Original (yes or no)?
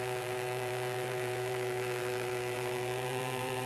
no